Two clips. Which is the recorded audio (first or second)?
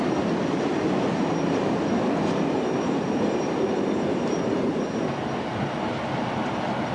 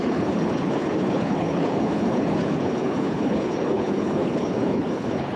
first